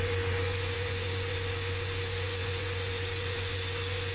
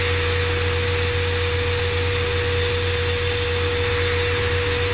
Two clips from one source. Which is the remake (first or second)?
first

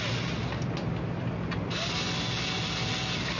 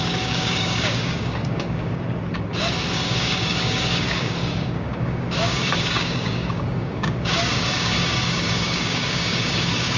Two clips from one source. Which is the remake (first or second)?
second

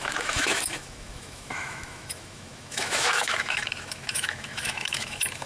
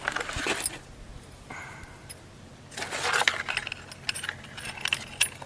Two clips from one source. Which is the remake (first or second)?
first